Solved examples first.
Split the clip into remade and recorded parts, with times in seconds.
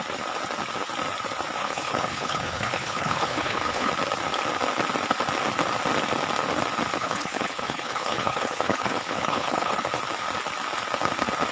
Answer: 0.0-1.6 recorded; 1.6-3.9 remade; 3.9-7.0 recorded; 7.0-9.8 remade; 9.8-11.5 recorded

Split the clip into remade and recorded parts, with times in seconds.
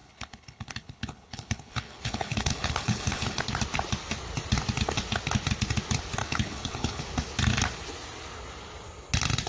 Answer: 0.0-3.4 remade; 3.4-6.2 recorded; 6.2-7.0 remade; 7.0-9.5 recorded